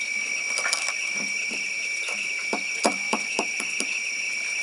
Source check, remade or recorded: remade